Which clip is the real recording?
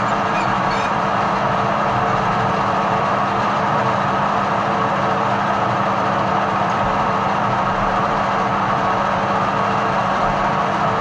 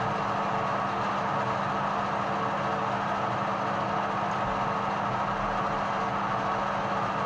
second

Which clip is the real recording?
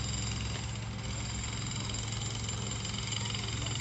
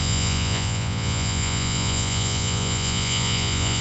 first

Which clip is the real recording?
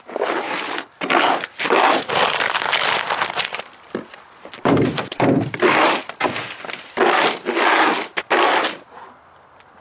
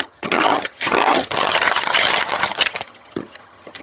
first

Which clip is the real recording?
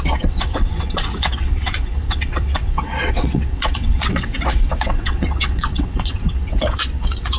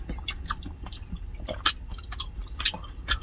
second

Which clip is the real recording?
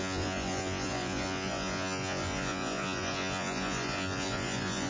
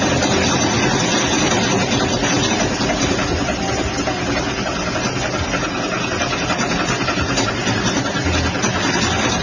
second